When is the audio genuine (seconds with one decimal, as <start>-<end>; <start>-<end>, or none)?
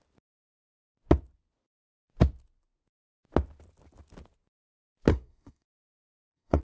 0.0-5.1